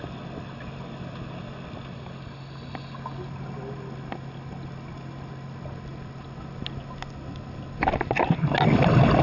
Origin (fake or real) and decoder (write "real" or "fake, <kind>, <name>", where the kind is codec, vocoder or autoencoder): real